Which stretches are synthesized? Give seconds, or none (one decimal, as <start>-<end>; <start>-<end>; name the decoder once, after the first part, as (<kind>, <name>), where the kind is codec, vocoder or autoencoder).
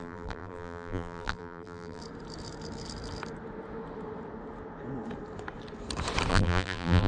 0.0-2.0 (vocoder, BigVGAN v2); 6.3-7.1